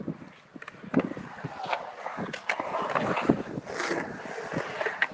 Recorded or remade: recorded